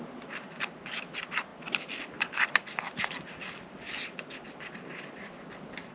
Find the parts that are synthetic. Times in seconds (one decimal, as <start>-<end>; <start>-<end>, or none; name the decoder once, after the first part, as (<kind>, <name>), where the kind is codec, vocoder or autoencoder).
none